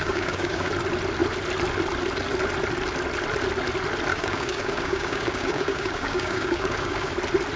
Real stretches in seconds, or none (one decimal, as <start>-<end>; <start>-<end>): 0.7-4.1; 7.1-7.6